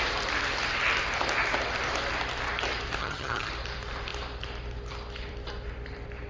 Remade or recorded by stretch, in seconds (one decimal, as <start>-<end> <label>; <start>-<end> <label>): 0.0-3.0 recorded; 3.0-3.5 remade; 3.5-6.3 recorded